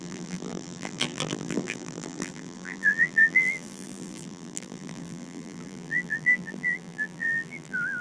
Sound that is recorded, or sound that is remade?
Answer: remade